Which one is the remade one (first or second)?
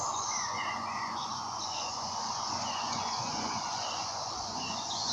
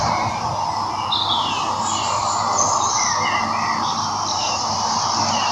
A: first